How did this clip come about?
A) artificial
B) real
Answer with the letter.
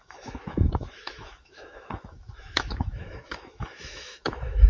A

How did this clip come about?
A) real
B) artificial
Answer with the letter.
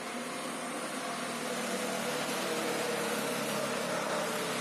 A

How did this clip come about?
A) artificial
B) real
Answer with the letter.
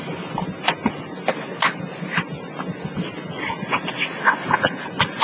B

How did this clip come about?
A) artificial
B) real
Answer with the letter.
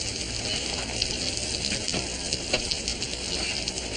B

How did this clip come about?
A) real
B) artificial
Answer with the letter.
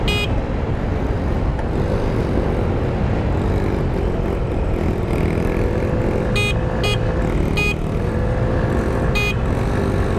A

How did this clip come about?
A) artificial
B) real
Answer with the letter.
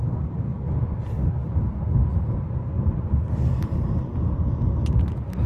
B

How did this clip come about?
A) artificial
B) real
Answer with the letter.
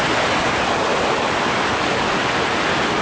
B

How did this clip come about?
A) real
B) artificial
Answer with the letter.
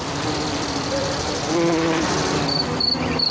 A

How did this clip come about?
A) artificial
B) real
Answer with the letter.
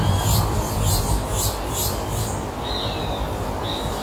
B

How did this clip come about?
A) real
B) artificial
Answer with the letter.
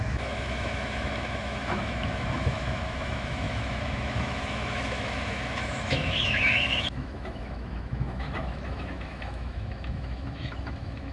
B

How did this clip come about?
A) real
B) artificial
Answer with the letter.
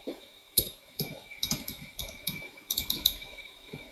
B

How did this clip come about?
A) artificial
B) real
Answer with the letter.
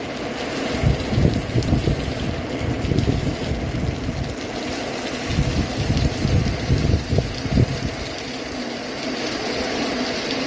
B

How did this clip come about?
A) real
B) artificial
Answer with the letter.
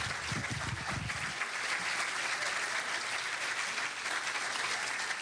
A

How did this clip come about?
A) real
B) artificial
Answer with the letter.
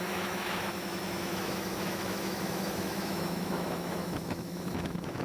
B